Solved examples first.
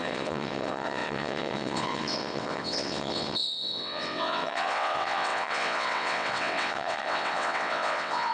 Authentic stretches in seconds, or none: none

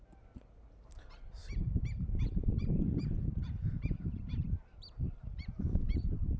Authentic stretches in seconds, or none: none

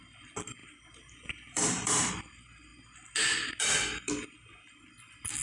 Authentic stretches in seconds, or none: 0.0-0.6; 2.1-5.4

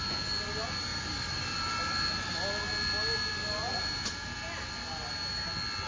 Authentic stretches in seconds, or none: 0.0-0.9; 2.4-5.9

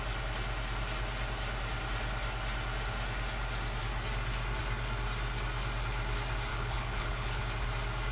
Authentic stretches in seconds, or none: 0.0-6.5; 7.4-8.1

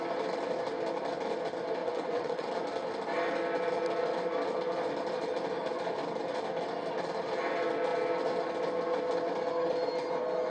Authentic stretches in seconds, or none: 0.0-1.8; 2.5-10.5